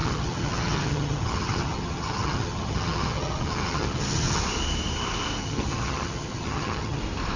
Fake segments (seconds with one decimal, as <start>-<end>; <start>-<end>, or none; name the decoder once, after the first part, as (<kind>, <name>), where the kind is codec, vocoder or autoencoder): 0.0-4.4 (vocoder, HiFi-GAN); 5.4-7.0